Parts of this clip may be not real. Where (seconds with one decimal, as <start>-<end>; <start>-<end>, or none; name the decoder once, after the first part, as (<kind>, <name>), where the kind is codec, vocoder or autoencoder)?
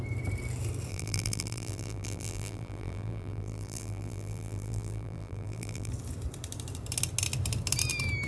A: 0.9-5.9 (vocoder, BigVGAN v2)